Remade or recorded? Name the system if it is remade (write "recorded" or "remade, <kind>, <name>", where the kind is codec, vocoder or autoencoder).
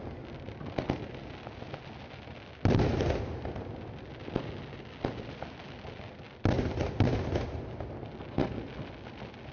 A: recorded